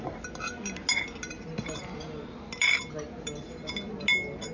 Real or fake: real